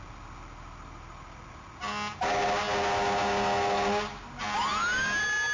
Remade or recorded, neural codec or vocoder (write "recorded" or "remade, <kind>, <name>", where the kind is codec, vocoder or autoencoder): recorded